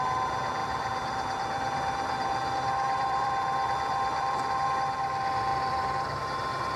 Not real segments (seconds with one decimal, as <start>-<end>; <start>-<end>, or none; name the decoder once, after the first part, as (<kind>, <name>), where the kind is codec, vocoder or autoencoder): 0.6-4.7 (vocoder, BigVGAN v2); 5.5-6.2